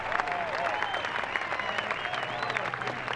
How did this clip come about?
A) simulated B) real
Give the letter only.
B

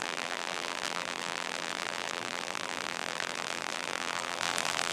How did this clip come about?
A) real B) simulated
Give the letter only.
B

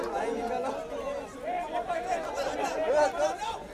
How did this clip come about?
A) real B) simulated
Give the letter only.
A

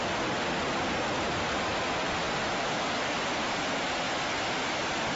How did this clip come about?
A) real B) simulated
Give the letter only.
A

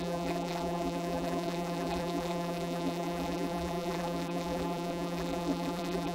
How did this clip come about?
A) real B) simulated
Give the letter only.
B